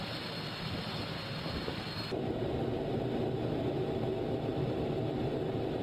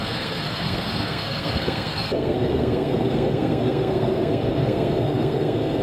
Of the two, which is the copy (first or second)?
second